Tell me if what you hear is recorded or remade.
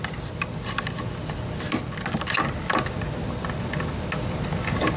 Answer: recorded